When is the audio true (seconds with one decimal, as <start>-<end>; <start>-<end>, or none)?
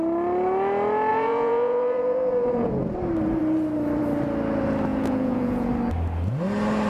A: 0.0-1.1; 2.7-4.9; 5.7-6.9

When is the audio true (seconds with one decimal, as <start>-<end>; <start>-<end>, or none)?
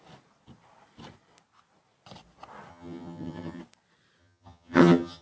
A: 0.0-2.7; 3.6-4.2